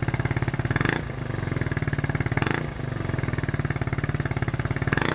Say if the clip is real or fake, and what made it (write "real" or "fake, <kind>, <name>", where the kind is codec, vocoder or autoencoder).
fake, vocoder, BigVGAN v2